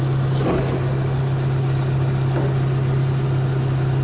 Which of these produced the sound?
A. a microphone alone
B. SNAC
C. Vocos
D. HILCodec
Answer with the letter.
A